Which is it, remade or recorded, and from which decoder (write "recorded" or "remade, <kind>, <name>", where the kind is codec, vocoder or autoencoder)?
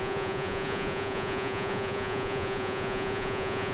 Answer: remade, vocoder, Vocos